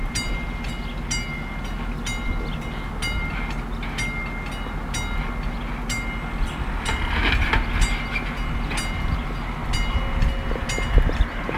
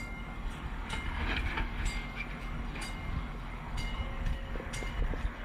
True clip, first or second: first